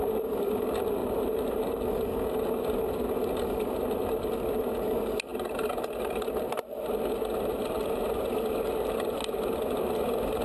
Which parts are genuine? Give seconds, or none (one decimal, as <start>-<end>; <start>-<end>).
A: 0.0-1.0; 1.6-10.4